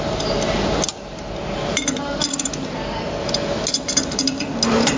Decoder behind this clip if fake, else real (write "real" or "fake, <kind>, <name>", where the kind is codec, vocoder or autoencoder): real